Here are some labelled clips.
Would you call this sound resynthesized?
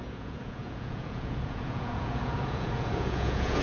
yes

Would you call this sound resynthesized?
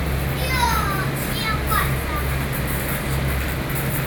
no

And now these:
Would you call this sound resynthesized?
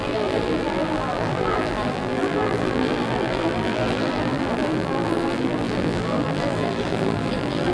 yes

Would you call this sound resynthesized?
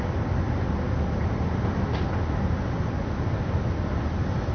no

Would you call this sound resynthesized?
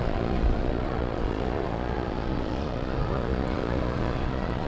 yes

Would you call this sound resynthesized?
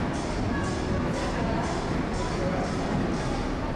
no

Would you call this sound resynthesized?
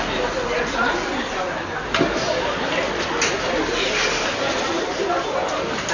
no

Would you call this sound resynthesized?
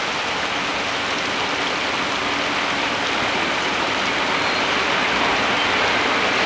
no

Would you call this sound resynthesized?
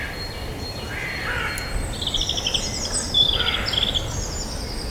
no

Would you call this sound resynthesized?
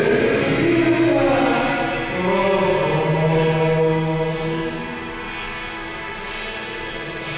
no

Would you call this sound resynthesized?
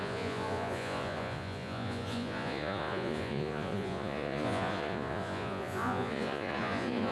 yes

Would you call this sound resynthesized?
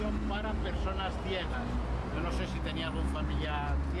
no